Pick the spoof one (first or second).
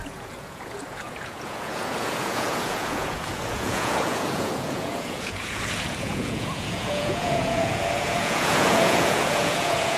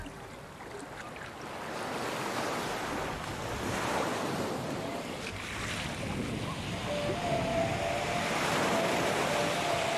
first